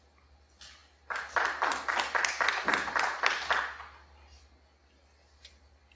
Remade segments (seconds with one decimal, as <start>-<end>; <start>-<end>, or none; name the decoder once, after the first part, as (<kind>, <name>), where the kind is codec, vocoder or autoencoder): none

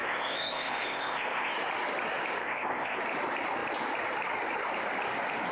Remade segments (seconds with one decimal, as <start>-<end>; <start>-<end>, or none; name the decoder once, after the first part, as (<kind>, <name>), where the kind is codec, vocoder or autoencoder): 0.0-1.5 (codec, ZipCodec); 2.4-3.0

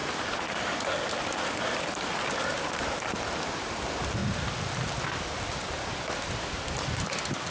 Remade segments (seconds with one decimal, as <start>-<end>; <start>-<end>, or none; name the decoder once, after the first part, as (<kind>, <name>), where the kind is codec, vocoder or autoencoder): none

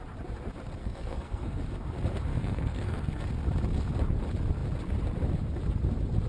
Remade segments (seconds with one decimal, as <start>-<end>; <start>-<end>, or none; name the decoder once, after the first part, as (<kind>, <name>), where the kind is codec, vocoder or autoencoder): 0.8-1.6 (codec, SNAC); 2.3-3.2

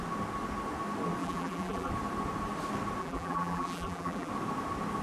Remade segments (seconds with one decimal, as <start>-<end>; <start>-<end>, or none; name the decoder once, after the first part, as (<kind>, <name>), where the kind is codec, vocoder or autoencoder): 1.2-1.9 (vocoder, BigVGAN v2); 3.0-4.3

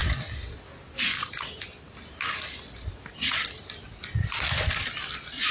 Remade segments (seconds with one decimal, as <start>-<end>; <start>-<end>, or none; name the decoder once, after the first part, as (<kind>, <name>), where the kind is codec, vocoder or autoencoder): none